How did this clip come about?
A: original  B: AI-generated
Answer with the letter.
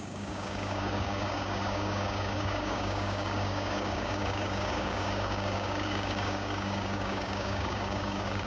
B